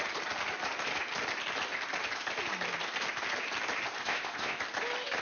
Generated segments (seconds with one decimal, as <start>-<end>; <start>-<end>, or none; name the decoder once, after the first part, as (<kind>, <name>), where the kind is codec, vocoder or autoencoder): 4.0-4.6 (codec, ZipCodec)